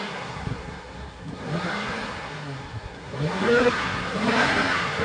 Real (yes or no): no